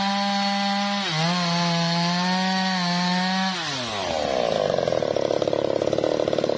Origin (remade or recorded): recorded